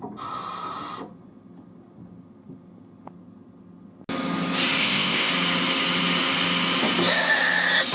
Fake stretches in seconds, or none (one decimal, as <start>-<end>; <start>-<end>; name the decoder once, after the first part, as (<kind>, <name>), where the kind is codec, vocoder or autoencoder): 4.8-5.3 (codec, ZipCodec)